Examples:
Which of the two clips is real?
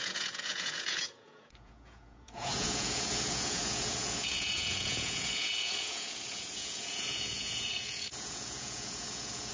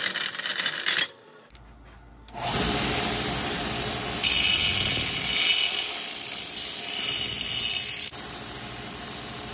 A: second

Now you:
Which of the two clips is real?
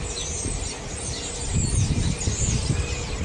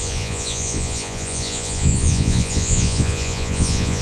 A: first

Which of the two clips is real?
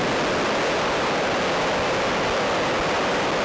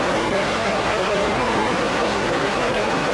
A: first